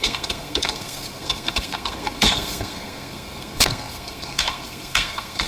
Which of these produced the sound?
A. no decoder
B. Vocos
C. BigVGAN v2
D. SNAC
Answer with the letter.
D